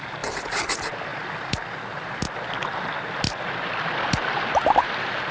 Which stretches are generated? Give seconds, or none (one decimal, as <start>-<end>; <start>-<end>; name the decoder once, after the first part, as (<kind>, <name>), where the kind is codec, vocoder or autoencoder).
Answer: none